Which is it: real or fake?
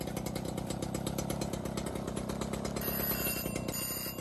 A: real